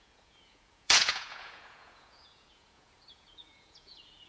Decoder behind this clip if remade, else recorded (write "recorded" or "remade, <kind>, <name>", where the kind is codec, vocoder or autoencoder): remade, vocoder, Vocos